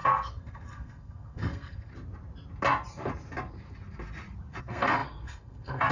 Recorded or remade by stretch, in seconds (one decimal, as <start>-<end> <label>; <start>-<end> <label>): 0.0-1.9 remade; 1.9-4.6 recorded; 4.6-5.9 remade